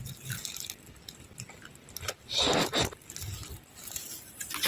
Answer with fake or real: real